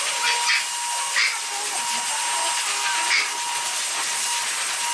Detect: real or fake real